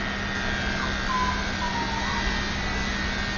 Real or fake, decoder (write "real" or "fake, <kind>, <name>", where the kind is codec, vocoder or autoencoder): real